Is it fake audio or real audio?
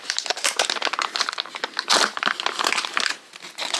real